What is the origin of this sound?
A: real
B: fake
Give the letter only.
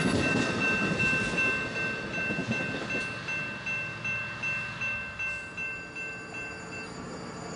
A